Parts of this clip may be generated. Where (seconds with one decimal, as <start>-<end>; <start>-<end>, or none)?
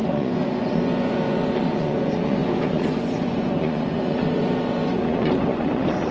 0.0-6.1